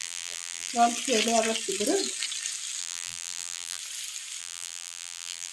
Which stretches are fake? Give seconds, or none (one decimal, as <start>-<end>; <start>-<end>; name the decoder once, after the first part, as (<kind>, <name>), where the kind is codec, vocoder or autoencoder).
0.0-0.7 (vocoder, BigVGAN v2); 2.8-3.8; 4.4-5.5